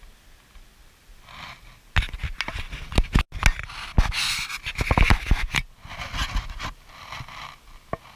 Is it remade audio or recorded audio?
recorded